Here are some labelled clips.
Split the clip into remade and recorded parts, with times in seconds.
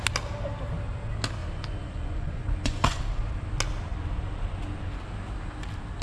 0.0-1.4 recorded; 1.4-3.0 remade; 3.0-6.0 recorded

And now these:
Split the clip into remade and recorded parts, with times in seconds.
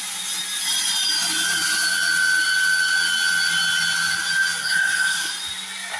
0.0-4.6 recorded; 4.6-5.3 remade; 5.3-6.0 recorded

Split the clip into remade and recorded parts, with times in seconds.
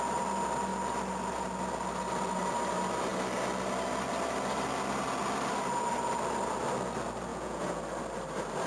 0.0-7.3 recorded; 7.3-7.8 remade; 7.8-8.7 recorded